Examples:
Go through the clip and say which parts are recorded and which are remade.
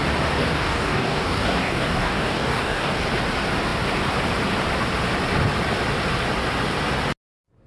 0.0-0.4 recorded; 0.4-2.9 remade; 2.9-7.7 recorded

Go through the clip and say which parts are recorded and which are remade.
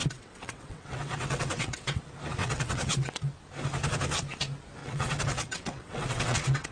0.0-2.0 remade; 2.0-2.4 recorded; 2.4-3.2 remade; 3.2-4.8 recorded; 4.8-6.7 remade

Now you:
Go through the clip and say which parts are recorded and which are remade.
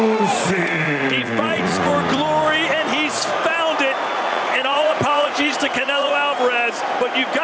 0.0-1.9 remade; 1.9-4.1 recorded; 4.1-6.1 remade; 6.1-7.4 recorded